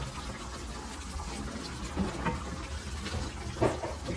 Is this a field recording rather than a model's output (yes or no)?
yes